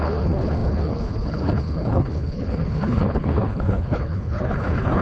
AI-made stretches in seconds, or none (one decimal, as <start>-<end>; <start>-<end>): 0.0-5.0